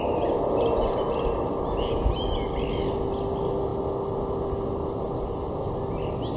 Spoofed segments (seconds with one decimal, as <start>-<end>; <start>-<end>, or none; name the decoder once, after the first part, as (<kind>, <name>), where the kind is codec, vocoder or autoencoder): none